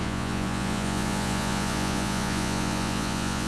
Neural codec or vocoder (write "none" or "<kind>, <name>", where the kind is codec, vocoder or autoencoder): vocoder, Vocos